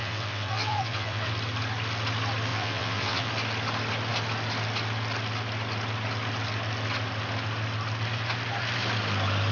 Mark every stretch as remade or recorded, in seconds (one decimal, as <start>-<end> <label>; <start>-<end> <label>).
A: 0.0-1.3 remade; 1.3-2.5 recorded; 2.5-3.3 remade; 3.3-9.5 recorded

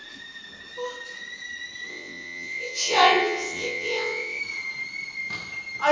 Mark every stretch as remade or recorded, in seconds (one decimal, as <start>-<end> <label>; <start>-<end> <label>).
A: 0.0-1.9 recorded; 1.9-4.4 remade; 4.4-5.9 recorded